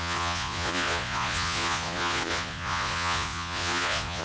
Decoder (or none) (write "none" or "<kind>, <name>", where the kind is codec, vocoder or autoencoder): vocoder, Vocos